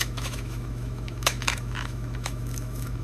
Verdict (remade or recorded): remade